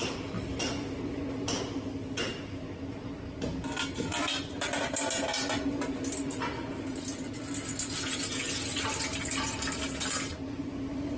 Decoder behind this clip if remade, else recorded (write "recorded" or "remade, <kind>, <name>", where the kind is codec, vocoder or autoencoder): recorded